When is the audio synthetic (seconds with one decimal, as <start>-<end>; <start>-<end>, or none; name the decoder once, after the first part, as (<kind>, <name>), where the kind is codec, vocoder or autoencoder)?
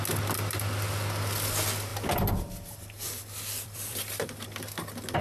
1.9-4.0 (vocoder, BigVGAN v2)